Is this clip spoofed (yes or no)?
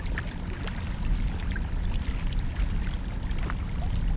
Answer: no